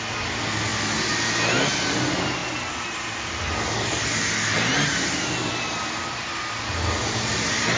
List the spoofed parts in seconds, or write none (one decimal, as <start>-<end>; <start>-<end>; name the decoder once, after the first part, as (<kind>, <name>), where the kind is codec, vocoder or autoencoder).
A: none